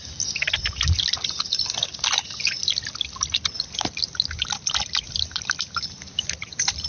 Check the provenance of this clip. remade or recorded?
recorded